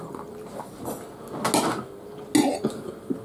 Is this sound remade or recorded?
recorded